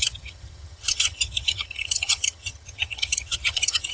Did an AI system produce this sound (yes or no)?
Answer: yes